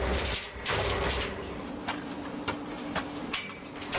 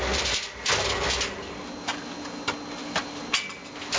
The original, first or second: second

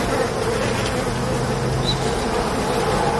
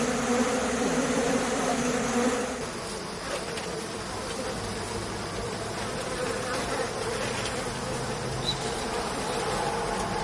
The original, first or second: first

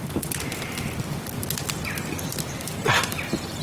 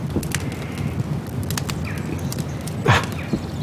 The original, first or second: second